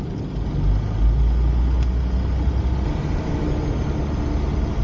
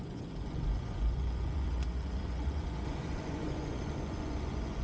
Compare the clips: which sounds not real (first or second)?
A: second